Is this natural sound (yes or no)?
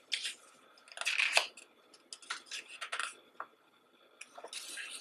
yes